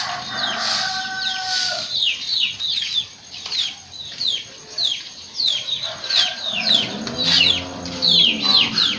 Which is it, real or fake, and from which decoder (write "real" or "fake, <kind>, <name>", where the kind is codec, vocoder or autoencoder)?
real